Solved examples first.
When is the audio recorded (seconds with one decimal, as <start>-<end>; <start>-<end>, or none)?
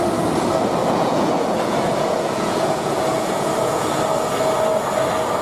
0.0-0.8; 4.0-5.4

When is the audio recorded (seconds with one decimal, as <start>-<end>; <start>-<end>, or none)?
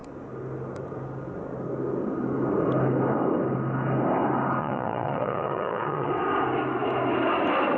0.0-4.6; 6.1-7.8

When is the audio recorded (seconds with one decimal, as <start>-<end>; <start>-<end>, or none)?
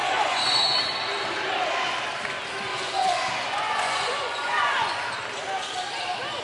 0.8-2.7; 5.1-6.4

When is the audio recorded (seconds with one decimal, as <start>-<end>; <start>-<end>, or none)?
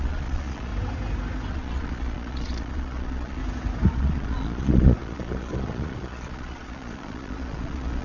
0.7-1.5; 3.4-3.9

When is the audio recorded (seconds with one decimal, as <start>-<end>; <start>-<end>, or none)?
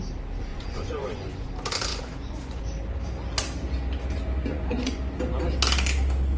0.0-0.5; 1.5-1.9; 2.6-4.5; 5.0-6.4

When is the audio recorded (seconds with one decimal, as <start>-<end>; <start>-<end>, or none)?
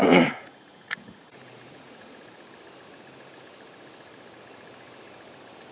2.4-5.7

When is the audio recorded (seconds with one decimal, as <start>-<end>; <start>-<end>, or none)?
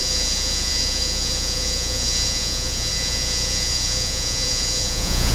none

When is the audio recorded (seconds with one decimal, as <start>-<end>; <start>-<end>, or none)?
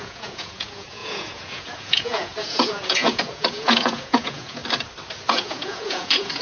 4.6-5.3